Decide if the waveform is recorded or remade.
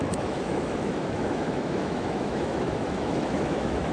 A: remade